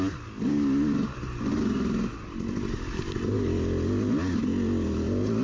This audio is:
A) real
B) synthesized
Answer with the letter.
A